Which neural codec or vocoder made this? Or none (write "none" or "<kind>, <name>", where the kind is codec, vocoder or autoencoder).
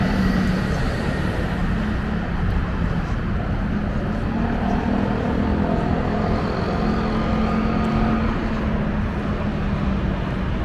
none